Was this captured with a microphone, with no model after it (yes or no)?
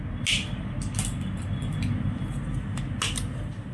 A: yes